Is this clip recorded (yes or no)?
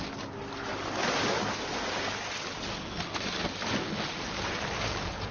yes